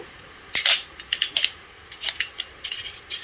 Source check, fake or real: real